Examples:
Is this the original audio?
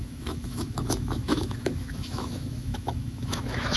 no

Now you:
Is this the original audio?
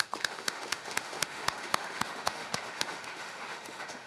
no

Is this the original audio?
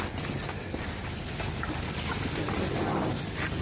yes